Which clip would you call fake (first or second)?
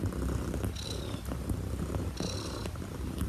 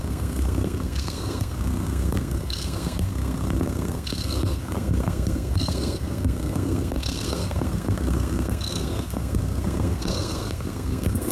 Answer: second